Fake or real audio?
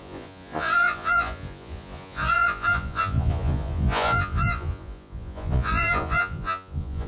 fake